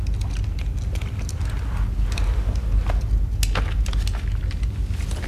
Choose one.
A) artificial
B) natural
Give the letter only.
B